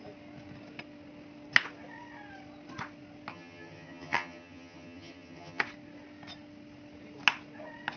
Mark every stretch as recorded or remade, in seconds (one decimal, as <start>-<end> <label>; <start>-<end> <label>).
0.0-3.3 recorded; 3.3-5.6 remade; 5.6-8.0 recorded